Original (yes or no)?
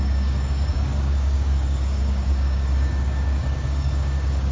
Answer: no